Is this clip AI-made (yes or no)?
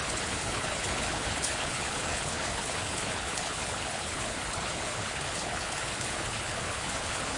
yes